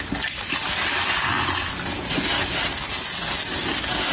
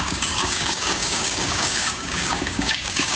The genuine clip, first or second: first